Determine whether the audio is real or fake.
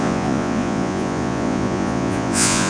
fake